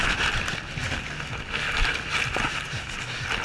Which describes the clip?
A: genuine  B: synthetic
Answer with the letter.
A